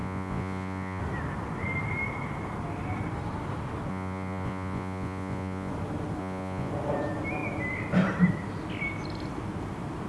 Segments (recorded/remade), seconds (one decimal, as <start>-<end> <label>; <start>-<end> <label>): 0.0-1.0 remade; 1.0-3.9 recorded; 3.9-5.7 remade; 5.7-6.2 recorded; 6.2-6.7 remade; 6.7-10.1 recorded